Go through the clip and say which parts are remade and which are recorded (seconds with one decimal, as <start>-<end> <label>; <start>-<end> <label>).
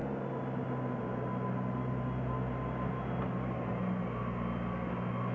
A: 0.0-5.3 recorded